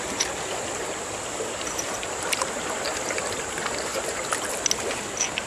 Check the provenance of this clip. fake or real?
real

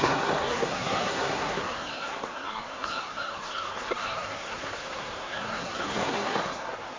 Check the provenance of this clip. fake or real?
fake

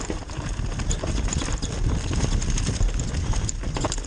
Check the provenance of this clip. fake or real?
real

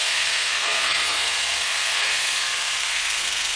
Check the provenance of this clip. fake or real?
fake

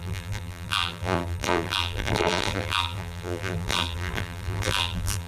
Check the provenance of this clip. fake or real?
fake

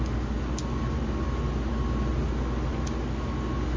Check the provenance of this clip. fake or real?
real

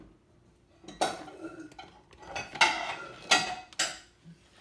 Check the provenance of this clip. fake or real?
real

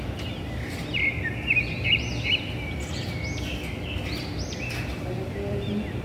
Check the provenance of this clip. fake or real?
real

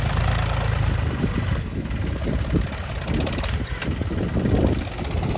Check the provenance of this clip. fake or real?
real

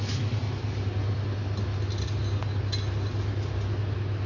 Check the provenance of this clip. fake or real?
real